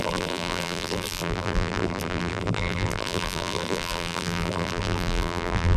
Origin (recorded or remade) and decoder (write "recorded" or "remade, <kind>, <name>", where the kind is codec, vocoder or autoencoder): remade, vocoder, BigVGAN v2